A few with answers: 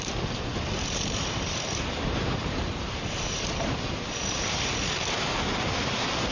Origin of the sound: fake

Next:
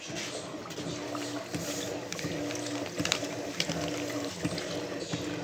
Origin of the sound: real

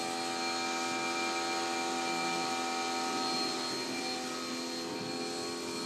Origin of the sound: real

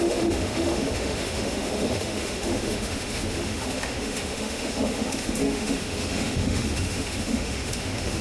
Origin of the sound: fake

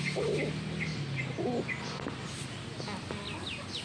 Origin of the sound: real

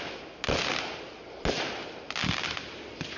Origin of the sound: real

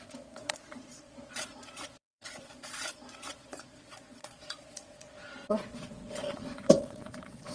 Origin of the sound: fake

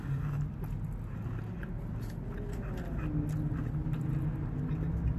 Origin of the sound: real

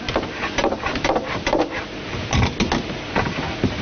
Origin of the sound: real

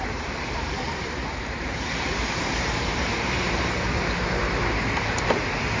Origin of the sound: fake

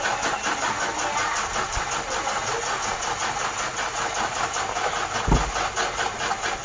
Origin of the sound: real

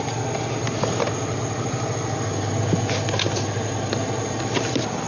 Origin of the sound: real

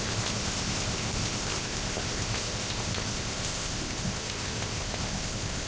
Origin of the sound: fake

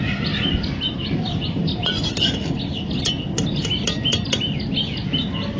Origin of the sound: real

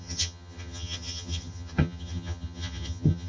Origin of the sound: fake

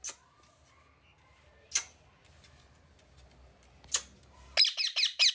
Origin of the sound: real